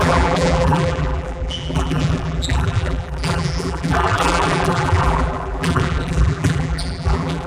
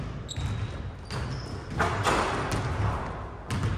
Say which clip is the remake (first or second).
first